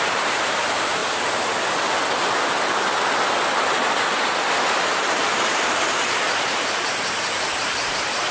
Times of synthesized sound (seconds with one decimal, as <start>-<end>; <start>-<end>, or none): 0.0-1.0; 4.6-8.3